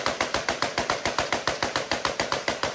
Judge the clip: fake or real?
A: real